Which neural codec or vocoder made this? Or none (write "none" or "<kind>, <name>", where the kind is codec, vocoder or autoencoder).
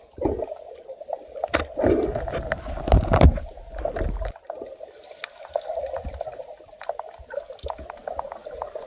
none